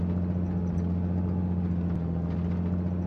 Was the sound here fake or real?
real